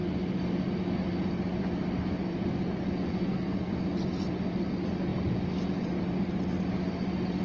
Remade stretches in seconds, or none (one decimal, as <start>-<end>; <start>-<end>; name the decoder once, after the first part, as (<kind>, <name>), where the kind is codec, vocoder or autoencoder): 3.1-3.7 (codec, SNAC)